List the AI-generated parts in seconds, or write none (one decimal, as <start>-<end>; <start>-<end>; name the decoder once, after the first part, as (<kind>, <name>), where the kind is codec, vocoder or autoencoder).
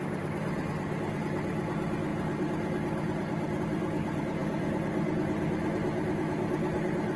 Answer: none